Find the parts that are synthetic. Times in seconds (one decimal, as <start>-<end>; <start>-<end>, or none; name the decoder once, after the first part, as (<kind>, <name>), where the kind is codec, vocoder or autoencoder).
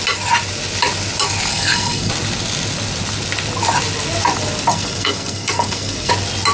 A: 1.5-2.1 (codec, SNAC); 4.7-6.1